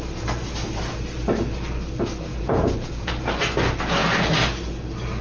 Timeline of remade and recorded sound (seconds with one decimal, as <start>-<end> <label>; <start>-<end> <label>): 0.0-2.3 recorded; 2.3-3.1 remade; 3.1-5.2 recorded